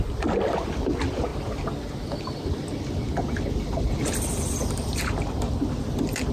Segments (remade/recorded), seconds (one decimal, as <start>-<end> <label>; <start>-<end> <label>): 0.0-6.3 recorded